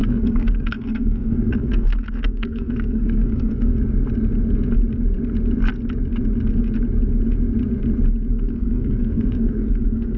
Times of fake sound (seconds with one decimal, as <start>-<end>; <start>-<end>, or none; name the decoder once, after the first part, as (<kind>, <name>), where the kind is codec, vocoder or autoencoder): 0.0-3.7 (codec, SNAC); 8.3-10.2